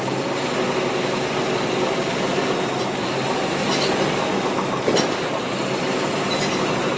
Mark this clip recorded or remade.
recorded